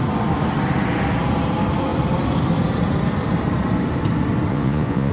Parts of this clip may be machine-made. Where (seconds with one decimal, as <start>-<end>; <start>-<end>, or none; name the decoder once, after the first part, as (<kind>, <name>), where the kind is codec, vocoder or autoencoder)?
4.5-5.1 (vocoder, Vocos)